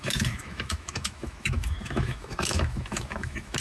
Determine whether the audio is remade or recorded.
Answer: remade